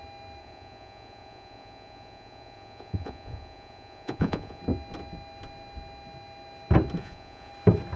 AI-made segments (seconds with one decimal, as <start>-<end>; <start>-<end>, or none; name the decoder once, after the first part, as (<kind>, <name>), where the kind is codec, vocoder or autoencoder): 0.4-4.6 (vocoder, Vocos); 7.0-7.5